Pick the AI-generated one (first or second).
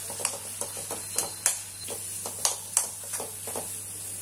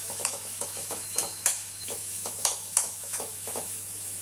second